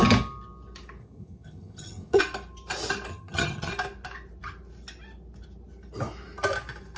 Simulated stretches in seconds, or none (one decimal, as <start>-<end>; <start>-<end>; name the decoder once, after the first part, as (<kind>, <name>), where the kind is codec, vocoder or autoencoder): 1.0-2.2 (vocoder, HiFi-GAN); 3.1-3.7